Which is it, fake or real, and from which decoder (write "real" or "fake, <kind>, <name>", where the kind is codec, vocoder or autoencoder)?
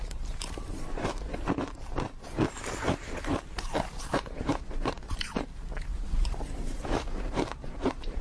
fake, vocoder, BigVGAN v2